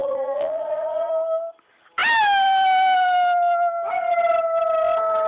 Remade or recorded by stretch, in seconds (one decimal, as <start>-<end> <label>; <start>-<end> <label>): 0.0-1.1 remade; 1.1-5.3 recorded